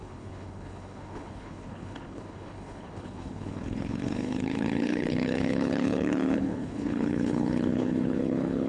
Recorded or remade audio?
remade